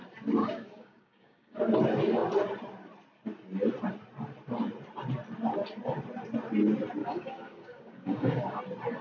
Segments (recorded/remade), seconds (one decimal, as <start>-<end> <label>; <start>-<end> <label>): 0.0-0.4 recorded; 0.4-1.6 remade; 1.6-7.0 recorded; 7.0-8.6 remade; 8.6-9.0 recorded